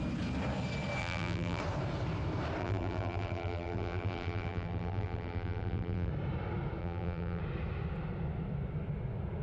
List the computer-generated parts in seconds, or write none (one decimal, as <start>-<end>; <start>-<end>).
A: 1.0-1.6; 2.6-6.1; 6.8-7.4